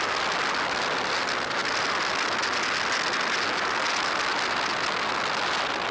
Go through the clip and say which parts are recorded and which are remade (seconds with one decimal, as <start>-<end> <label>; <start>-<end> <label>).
0.0-5.9 recorded